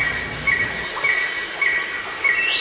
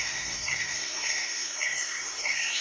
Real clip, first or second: first